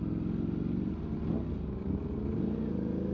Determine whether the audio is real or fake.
real